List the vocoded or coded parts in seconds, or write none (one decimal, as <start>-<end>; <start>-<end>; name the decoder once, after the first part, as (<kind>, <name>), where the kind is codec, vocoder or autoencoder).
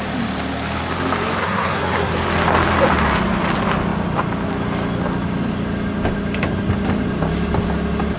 1.4-2.1 (codec, SNAC)